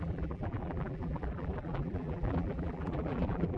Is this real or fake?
fake